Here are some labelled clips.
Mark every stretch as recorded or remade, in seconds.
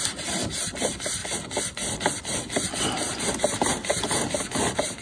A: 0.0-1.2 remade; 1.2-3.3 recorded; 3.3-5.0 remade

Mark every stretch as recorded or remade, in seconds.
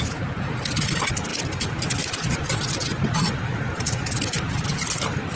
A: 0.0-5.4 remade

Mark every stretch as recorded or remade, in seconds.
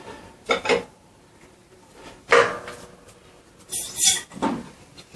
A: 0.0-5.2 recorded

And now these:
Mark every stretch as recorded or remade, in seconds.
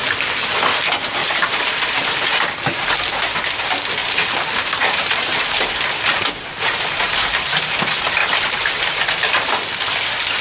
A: 0.0-1.2 recorded; 1.2-1.8 remade; 1.8-2.3 recorded; 2.3-3.1 remade; 3.1-4.0 recorded; 4.0-7.8 remade; 7.8-8.2 recorded; 8.2-9.5 remade; 9.5-10.4 recorded